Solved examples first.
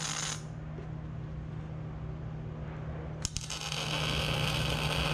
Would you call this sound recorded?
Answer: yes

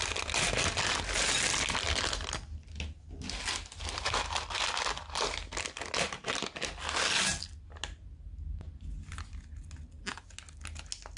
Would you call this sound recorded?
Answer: yes